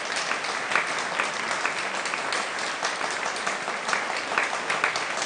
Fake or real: real